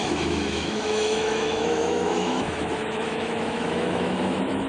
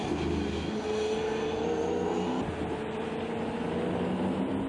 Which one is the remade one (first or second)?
first